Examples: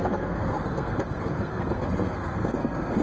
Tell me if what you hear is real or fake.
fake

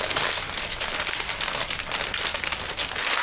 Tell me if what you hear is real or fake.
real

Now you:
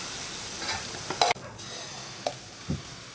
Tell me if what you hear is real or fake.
real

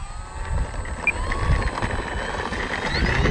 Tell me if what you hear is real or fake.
real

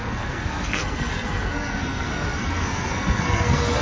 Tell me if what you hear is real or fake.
fake